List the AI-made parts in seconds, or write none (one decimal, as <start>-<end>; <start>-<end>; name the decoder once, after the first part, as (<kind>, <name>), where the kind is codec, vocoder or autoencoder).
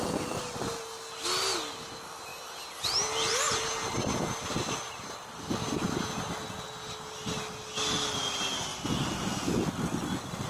8.7-9.7 (vocoder, BigVGAN v2)